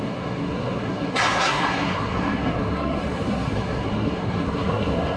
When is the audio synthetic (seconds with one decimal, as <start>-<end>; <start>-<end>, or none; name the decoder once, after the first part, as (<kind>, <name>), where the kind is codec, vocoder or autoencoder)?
0.0-5.2 (codec, SNAC)